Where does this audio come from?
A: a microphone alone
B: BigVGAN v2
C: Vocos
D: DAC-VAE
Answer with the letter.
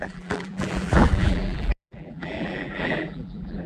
B